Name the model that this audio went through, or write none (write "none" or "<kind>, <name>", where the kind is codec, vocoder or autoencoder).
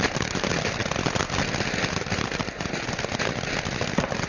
none